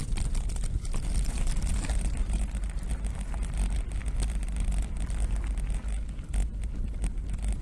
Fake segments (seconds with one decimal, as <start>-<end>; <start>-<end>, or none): 1.7-2.9